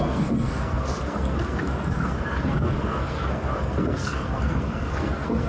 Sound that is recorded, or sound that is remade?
remade